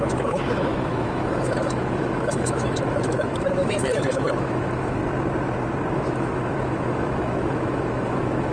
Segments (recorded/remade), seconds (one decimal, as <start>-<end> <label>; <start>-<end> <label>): 0.0-5.0 remade; 5.0-5.9 recorded; 5.9-8.5 remade